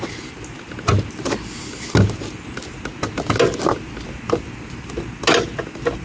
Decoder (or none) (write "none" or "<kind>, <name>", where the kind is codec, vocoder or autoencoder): none